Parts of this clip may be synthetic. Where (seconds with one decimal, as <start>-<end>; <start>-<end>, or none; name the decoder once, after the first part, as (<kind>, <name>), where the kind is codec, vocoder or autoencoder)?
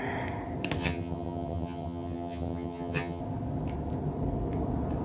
0.8-3.2 (vocoder, HiFi-GAN)